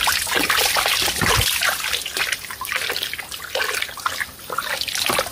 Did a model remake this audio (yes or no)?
no